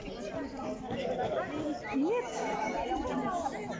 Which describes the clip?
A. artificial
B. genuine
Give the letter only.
B